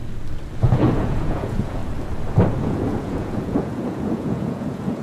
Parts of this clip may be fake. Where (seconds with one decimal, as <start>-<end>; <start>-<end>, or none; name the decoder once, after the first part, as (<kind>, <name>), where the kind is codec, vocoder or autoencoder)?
0.6-1.8 (vocoder, Vocos); 2.6-5.0